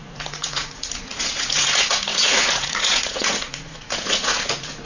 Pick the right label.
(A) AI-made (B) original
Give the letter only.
A